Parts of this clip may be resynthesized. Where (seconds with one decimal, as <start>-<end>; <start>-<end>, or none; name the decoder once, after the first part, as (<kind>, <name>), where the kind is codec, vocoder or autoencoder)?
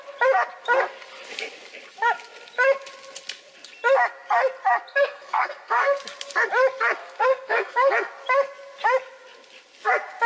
4.9-6.0 (codec, SNAC); 7.0-7.9